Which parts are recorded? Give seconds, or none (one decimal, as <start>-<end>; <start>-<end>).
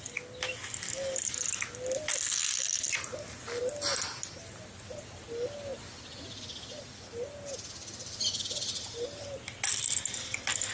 0.0-10.7